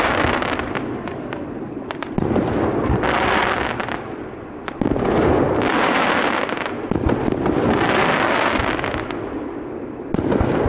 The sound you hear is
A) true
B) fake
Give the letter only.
A